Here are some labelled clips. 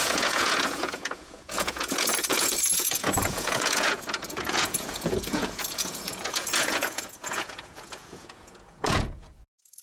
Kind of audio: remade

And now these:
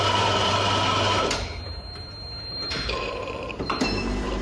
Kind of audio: remade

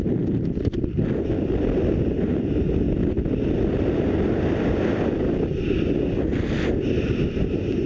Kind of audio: recorded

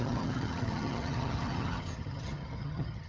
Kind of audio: remade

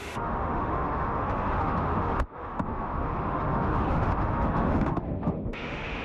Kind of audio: remade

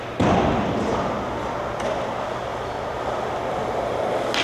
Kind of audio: recorded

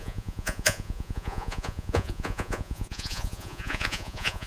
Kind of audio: remade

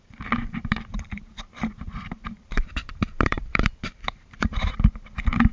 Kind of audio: remade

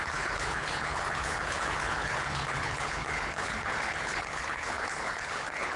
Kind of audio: remade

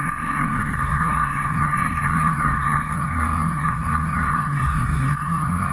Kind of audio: remade